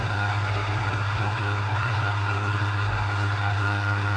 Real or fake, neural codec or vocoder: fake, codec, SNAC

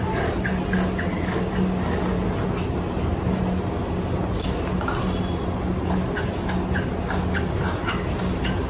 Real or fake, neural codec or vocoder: real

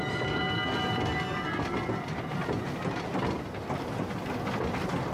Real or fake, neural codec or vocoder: real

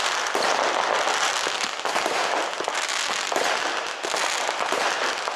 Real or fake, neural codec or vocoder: real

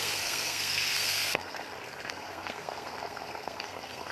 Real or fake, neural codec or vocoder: fake, codec, SNAC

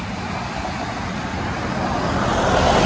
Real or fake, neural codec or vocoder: real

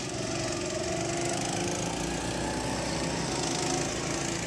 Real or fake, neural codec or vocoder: real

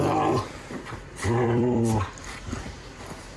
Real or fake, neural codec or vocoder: fake, vocoder, BigVGAN v2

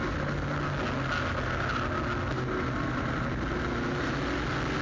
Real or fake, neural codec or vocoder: real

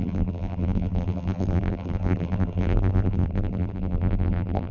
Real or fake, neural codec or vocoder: fake, vocoder, BigVGAN v2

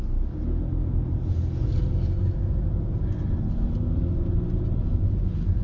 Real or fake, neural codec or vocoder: real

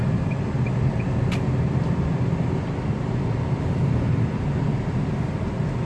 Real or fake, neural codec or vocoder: real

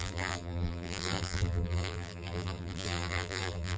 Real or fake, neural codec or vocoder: fake, vocoder, BigVGAN v2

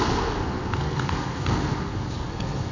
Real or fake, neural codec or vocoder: fake, codec, SNAC